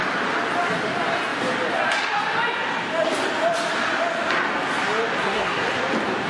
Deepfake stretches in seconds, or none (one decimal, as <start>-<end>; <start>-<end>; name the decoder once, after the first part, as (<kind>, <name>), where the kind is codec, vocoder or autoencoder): 5.2-5.8 (codec, SNAC)